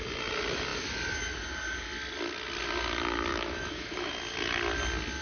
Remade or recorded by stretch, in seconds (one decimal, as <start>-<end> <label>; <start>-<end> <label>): 0.0-3.3 recorded; 3.3-4.1 remade; 4.1-5.2 recorded